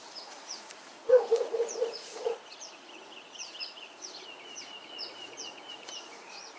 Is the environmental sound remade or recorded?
remade